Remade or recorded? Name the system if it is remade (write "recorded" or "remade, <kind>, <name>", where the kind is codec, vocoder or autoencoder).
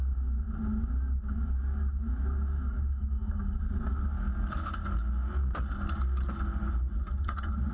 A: recorded